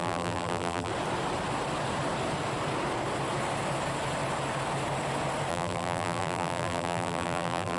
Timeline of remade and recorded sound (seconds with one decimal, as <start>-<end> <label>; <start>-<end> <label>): 0.0-0.9 remade; 0.9-5.5 recorded; 5.5-7.8 remade